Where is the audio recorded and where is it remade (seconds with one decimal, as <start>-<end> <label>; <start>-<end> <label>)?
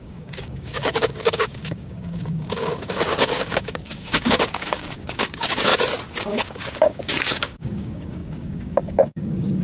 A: 0.0-5.7 remade; 5.7-6.2 recorded; 6.2-9.6 remade